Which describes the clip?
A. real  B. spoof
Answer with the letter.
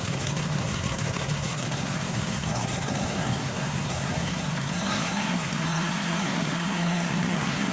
B